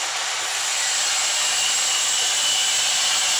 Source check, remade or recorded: recorded